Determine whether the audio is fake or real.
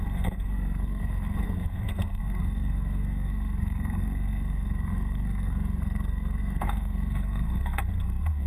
fake